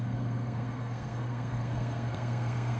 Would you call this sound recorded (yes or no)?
no